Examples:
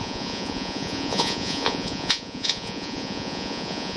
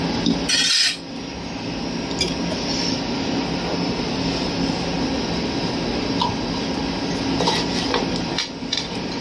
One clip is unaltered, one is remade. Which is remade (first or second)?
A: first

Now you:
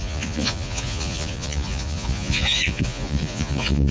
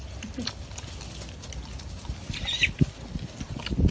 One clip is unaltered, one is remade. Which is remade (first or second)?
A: first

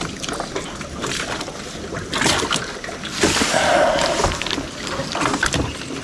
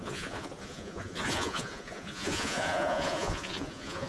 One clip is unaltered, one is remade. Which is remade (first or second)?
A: second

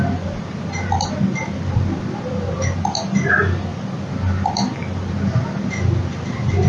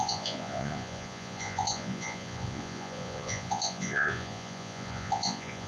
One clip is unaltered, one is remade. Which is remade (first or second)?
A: second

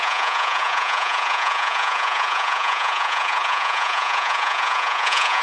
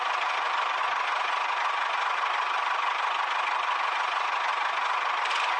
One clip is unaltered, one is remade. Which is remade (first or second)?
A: first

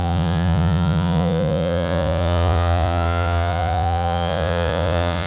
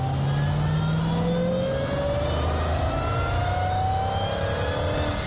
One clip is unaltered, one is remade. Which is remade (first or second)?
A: first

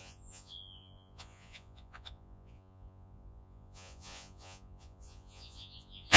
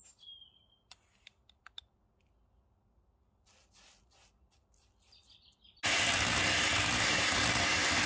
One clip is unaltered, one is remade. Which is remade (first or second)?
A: first